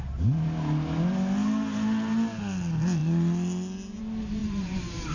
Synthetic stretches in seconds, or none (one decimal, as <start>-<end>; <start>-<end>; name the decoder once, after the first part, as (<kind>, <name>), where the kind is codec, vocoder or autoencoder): 4.4-5.1 (vocoder, BigVGAN v2)